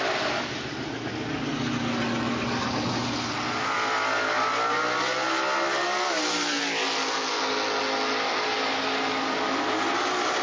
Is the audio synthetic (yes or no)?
no